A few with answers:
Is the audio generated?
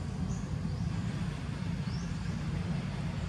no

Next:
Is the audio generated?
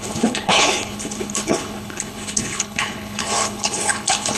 yes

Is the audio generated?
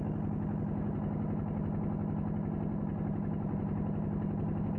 no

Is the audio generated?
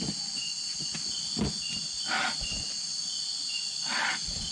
no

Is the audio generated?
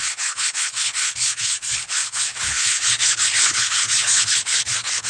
yes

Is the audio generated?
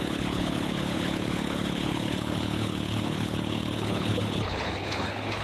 yes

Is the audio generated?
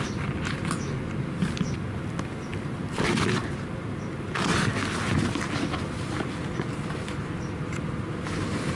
no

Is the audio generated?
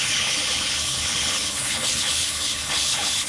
yes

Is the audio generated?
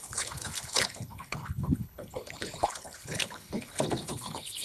yes